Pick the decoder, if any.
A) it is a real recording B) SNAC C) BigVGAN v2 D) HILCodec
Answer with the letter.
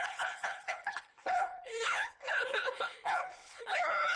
D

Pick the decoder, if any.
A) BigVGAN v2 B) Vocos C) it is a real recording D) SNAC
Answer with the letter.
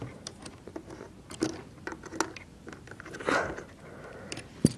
C